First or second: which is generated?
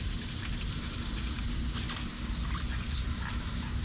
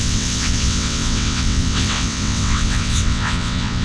second